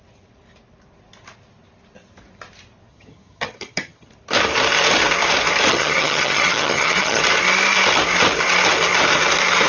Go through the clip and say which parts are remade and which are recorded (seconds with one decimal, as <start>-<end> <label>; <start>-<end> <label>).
0.0-2.9 recorded; 2.9-4.1 remade; 4.1-5.7 recorded; 5.7-7.2 remade; 7.2-9.7 recorded